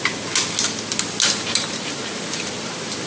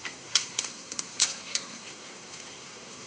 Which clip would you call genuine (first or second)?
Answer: first